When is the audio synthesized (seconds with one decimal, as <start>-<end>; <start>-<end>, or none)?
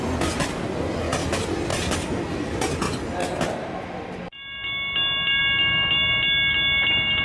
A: none